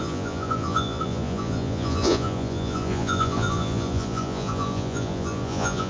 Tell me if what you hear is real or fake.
fake